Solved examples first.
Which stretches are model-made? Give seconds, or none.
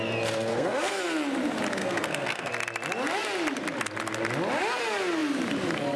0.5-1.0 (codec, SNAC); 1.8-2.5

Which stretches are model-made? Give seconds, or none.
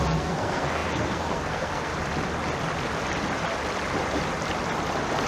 0.0-1.9 (codec, SNAC)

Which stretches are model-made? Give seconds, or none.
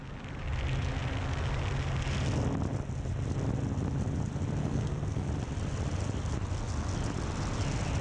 4.6-5.3 (codec, SNAC)